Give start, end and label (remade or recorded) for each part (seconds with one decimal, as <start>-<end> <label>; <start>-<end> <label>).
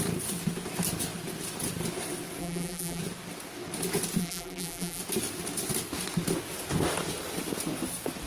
0.0-2.4 recorded; 2.4-3.0 remade; 3.0-4.2 recorded; 4.2-5.0 remade; 5.0-8.3 recorded